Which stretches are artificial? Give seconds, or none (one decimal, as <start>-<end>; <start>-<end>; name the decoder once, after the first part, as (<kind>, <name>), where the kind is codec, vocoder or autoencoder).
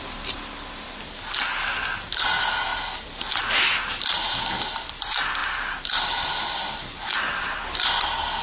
none